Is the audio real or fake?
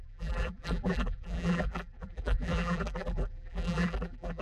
fake